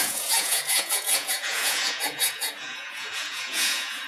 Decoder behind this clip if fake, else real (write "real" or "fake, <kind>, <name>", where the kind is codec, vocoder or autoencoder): fake, vocoder, Vocos